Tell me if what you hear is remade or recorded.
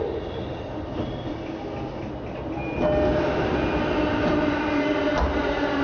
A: recorded